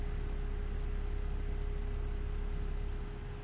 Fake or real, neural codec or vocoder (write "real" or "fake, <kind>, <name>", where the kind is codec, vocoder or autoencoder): real